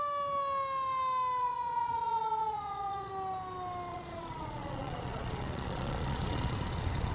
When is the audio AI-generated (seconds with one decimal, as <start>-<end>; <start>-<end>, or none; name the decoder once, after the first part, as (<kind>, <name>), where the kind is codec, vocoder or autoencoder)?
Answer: 1.4-3.1 (vocoder, Vocos); 3.9-7.1